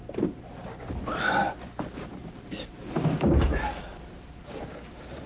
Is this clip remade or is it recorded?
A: recorded